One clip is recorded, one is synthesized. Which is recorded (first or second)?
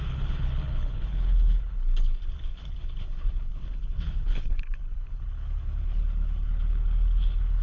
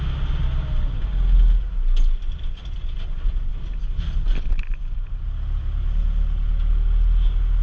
second